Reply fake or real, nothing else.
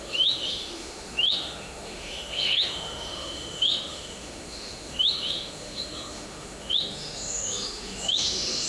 fake